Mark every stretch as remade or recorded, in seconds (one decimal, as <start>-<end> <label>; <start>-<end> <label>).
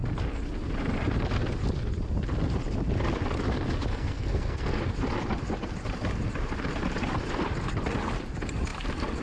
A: 0.0-3.9 recorded; 3.9-4.8 remade; 4.8-9.2 recorded